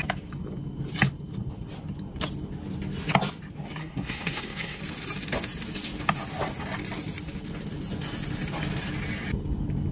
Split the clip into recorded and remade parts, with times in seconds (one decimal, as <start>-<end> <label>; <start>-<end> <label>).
0.0-3.8 recorded; 3.8-4.8 remade; 4.8-9.9 recorded